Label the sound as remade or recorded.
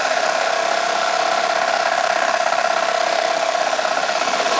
remade